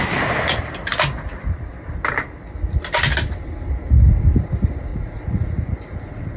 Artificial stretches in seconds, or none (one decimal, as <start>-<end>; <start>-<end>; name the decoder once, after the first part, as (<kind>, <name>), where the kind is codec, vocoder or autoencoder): 4.9-6.4 (vocoder, Vocos)